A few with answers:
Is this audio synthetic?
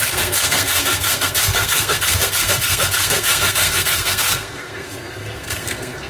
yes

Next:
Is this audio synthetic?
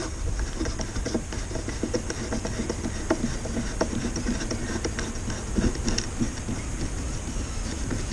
no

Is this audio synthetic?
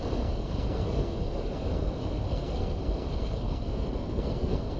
yes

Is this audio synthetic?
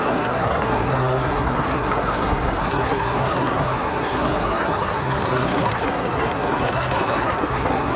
yes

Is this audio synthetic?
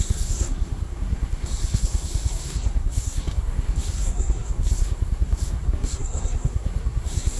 yes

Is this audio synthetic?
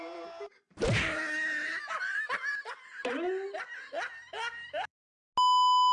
no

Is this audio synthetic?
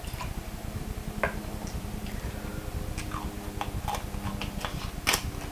no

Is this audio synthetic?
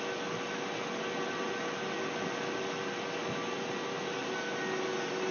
no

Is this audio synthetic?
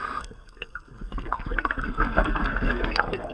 yes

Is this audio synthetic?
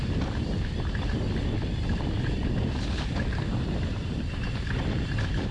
no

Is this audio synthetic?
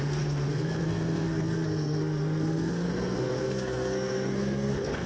yes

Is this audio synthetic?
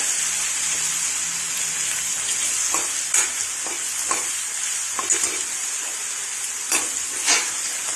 no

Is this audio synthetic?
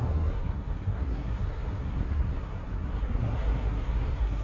yes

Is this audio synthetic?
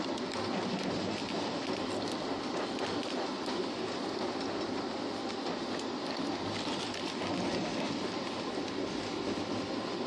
no